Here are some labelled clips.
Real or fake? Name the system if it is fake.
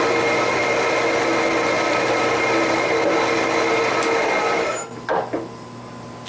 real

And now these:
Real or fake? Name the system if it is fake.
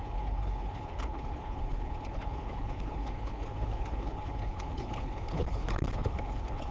fake, codec, HILCodec